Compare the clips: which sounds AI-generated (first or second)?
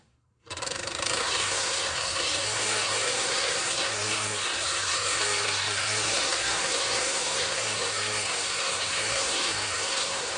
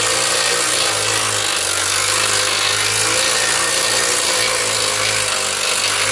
first